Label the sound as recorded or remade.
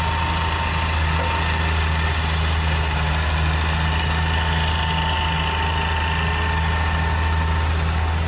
recorded